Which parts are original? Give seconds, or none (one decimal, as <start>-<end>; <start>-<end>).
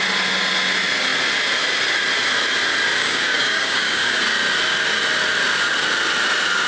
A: 0.0-3.0; 4.2-6.7